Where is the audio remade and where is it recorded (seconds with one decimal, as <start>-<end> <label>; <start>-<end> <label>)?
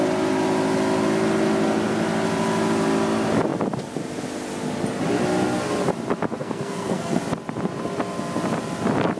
0.0-6.4 recorded; 6.4-7.2 remade; 7.2-9.2 recorded